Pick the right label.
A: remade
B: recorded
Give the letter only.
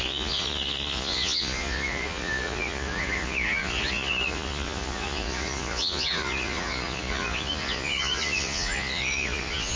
A